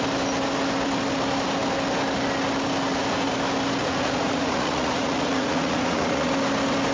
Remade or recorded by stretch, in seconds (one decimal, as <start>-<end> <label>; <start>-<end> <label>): 0.0-3.8 recorded; 3.8-6.3 remade; 6.3-6.9 recorded